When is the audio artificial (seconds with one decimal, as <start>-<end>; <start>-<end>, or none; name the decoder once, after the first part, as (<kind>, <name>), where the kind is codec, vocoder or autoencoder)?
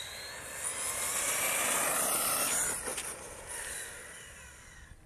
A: none